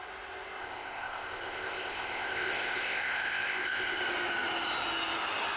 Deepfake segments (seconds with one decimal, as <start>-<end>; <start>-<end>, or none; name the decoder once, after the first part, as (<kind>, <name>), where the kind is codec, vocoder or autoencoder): 0.6-4.0 (codec, ZipCodec)